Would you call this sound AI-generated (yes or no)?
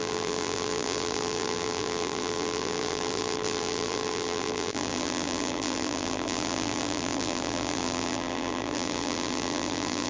yes